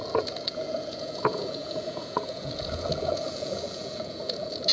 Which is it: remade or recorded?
remade